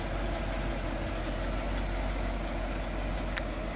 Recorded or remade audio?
recorded